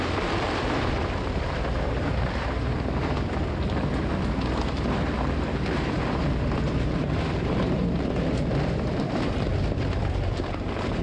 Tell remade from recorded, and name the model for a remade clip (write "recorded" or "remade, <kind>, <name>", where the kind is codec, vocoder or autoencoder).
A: remade, vocoder, BigVGAN v2